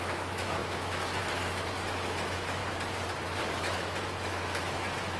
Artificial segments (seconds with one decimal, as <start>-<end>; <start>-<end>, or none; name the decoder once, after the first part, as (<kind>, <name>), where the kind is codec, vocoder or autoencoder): 0.0-2.6 (autoencoder, DAC-VAE); 3.5-5.2